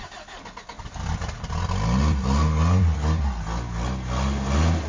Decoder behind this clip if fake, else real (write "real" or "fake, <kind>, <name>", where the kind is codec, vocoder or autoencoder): real